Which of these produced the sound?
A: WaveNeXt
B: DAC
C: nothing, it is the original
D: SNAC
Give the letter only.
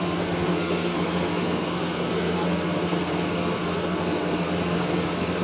D